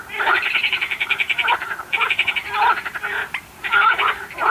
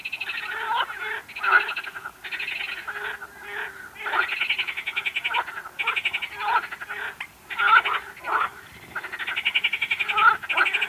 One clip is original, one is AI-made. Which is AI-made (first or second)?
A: first